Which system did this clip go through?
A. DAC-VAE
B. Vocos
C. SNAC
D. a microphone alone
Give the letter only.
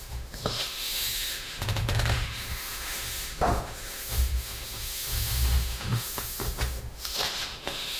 A